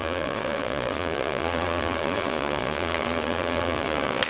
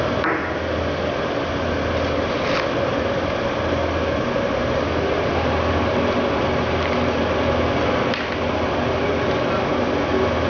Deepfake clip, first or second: first